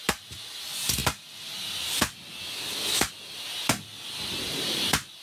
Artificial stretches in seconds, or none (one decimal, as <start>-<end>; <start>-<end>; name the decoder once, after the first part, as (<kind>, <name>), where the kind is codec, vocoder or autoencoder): none